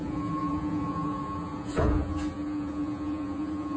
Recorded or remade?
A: remade